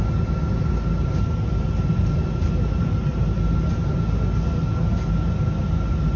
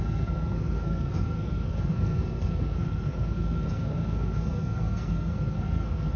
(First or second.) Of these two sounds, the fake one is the second